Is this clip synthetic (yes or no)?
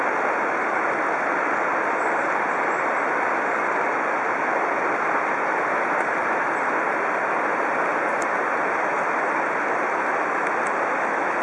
no